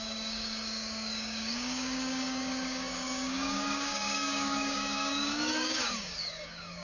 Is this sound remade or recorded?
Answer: remade